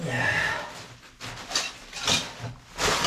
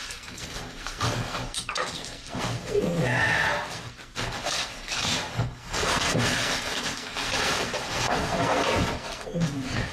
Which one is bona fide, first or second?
first